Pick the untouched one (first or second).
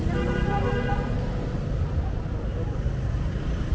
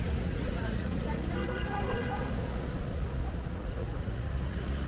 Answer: first